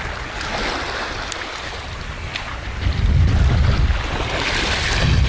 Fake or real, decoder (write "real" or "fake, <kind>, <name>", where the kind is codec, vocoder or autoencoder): real